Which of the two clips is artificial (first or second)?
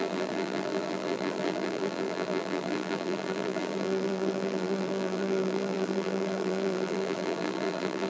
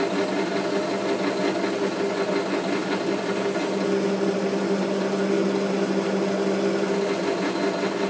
first